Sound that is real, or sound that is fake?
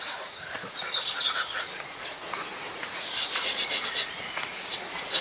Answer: fake